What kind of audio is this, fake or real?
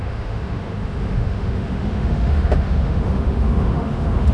fake